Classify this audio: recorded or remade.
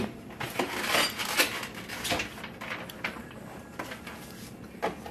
recorded